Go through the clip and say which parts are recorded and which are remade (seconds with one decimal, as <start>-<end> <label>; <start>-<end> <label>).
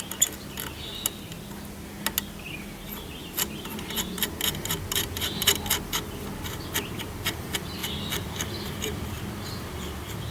0.0-10.3 recorded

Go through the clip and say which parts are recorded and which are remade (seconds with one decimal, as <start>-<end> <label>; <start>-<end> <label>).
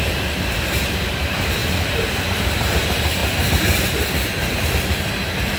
0.0-3.2 remade; 3.2-4.3 recorded; 4.3-5.6 remade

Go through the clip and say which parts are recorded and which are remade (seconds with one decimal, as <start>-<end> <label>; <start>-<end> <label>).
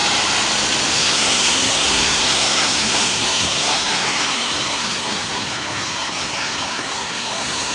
0.0-0.9 recorded; 0.9-7.7 remade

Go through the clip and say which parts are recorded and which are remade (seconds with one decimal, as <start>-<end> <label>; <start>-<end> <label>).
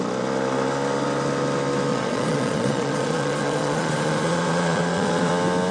0.0-1.9 recorded; 1.9-5.3 remade; 5.3-5.7 recorded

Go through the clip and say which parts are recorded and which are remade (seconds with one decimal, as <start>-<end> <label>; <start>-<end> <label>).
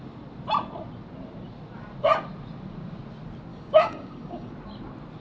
0.0-3.5 recorded; 3.5-4.5 remade; 4.5-5.2 recorded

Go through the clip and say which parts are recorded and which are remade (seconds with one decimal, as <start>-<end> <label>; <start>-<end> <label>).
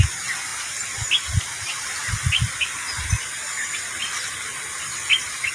0.0-2.0 recorded; 2.0-4.4 remade; 4.4-5.5 recorded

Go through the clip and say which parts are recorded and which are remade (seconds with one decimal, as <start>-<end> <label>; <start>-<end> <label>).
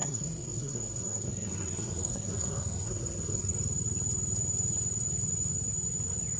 0.0-3.5 remade; 3.5-6.4 recorded